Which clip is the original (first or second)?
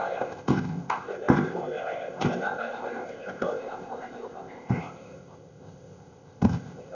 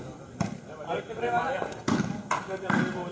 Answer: second